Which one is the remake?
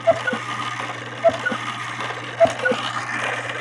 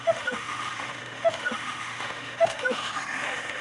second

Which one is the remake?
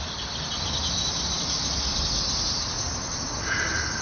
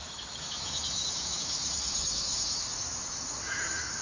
second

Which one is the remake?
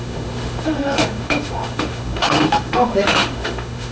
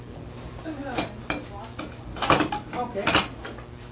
first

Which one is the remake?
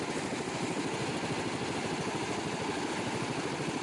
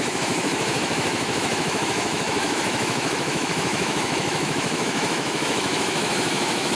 second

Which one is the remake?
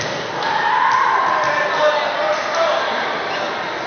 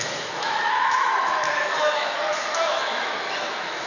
second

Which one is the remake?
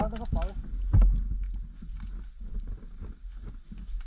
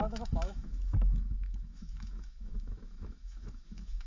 second